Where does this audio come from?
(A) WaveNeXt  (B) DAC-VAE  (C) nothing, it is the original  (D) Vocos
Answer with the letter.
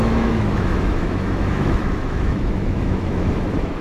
B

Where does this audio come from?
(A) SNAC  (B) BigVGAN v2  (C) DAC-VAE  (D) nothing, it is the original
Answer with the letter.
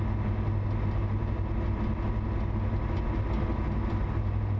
D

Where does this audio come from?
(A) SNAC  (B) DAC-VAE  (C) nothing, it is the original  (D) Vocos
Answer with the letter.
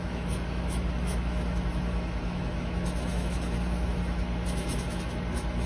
B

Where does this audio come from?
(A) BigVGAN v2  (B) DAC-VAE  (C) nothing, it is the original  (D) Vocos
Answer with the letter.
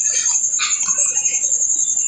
C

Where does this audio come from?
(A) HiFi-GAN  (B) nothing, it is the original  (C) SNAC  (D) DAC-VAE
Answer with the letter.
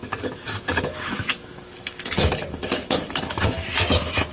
D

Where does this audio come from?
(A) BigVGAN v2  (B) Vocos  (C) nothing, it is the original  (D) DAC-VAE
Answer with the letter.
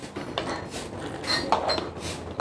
C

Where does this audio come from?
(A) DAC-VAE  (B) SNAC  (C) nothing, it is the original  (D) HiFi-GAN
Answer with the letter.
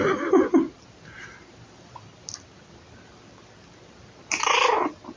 C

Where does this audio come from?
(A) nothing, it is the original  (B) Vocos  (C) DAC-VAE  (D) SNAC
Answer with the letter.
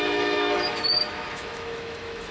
C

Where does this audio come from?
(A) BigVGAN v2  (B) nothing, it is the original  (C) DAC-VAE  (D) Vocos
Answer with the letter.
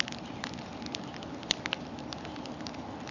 B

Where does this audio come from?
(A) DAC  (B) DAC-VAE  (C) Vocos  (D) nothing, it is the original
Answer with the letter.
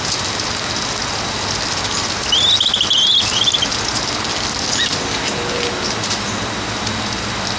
D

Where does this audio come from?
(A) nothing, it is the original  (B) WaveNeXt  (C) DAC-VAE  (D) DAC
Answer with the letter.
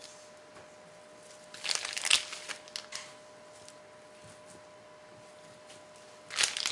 A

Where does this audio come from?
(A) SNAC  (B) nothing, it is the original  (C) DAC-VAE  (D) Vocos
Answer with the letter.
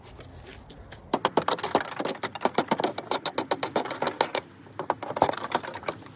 B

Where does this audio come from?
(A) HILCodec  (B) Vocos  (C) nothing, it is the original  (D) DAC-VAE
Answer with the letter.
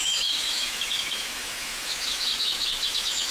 D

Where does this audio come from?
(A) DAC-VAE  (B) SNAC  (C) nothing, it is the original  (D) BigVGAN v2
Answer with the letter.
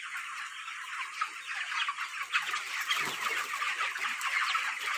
C